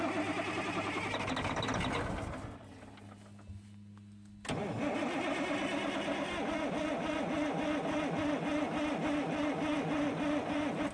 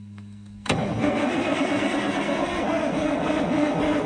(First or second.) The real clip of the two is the first